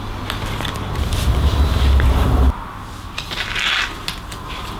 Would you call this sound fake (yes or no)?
no